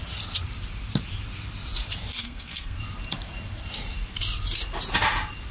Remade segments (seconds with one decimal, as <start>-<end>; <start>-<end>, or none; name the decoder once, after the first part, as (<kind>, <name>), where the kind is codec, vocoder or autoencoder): 2.2-2.8 (codec, SNAC)